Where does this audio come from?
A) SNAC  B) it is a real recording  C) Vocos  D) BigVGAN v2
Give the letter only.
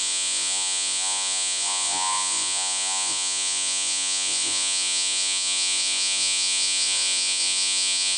C